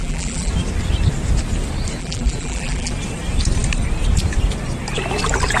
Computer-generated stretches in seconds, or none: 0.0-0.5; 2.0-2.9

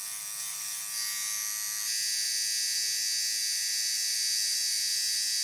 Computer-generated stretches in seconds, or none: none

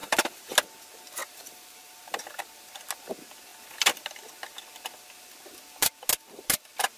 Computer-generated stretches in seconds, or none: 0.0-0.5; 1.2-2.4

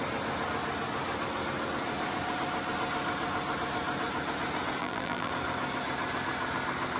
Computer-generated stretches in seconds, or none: 4.8-5.3

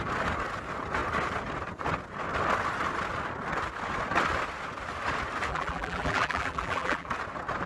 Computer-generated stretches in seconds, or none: 5.5-7.1

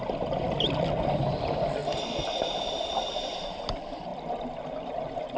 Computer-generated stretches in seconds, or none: 0.0-1.8; 2.9-5.4